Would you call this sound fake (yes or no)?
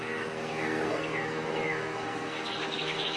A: yes